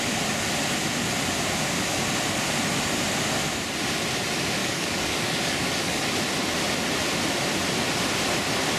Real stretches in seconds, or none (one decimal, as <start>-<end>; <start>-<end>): 0.0-4.6; 6.0-8.8